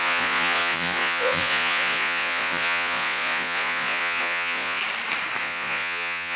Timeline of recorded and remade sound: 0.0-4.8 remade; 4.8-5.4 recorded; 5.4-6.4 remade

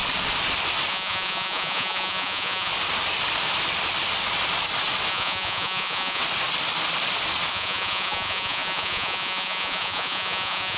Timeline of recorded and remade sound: 0.0-0.9 recorded; 0.9-2.7 remade; 2.7-5.1 recorded; 5.1-6.2 remade; 6.2-7.5 recorded; 7.5-10.8 remade

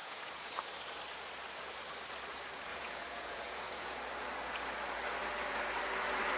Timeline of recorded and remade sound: 0.0-0.7 remade; 0.7-2.7 recorded; 2.7-4.0 remade; 4.0-6.4 recorded

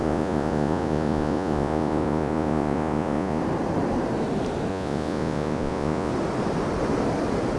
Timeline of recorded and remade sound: 0.0-3.4 remade; 3.4-4.7 recorded; 4.7-6.1 remade; 6.1-7.6 recorded

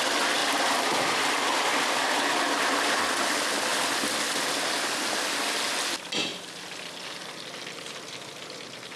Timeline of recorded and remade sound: 0.0-9.0 recorded